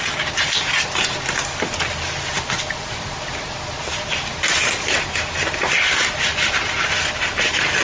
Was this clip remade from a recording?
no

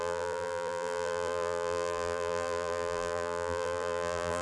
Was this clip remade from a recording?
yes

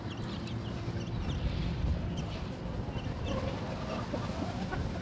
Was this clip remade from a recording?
no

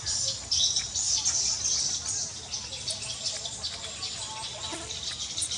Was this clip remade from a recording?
no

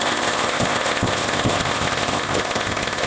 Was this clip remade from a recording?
yes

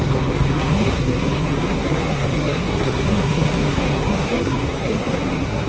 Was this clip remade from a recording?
yes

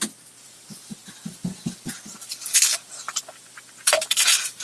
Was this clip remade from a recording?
yes